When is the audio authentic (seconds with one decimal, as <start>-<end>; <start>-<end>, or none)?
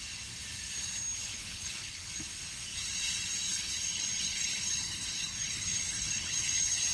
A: 0.0-1.3; 2.1-3.5